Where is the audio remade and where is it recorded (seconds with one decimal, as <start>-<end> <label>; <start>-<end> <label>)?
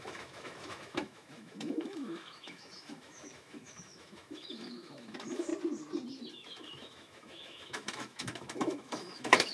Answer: 0.0-5.5 remade; 5.5-6.3 recorded; 6.3-9.5 remade